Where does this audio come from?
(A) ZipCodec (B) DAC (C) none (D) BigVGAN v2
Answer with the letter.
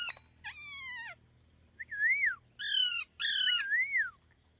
C